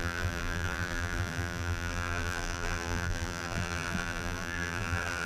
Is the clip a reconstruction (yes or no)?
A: yes